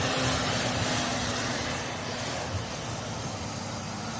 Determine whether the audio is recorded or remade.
recorded